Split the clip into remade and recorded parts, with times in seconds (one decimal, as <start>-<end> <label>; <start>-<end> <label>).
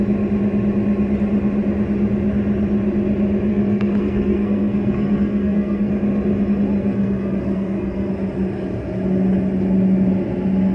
0.0-3.5 recorded; 3.5-5.9 remade; 5.9-6.8 recorded; 6.8-8.1 remade; 8.1-10.7 recorded